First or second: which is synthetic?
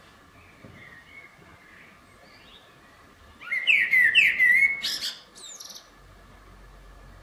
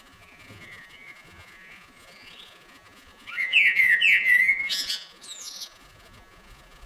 second